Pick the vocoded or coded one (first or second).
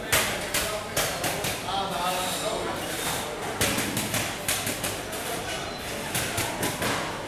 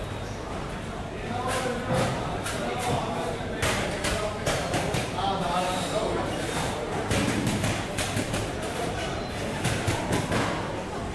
second